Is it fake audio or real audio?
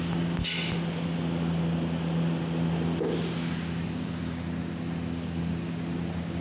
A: real